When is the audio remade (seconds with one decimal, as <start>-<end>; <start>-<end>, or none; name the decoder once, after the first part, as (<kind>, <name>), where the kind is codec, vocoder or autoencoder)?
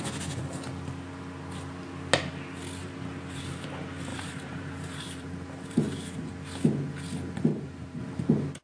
2.8-3.4 (vocoder, BigVGAN v2); 4.1-6.3; 7.5-8.0